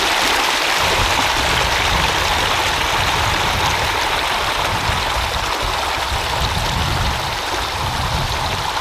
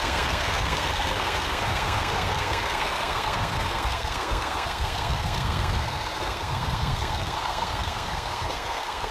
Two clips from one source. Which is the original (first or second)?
first